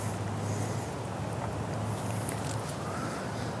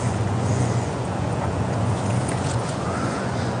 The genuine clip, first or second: first